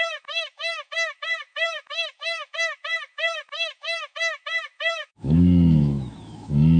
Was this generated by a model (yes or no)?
yes